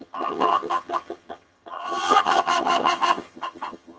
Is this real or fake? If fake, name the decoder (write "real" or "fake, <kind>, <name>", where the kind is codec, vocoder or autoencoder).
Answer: fake, vocoder, HiFi-GAN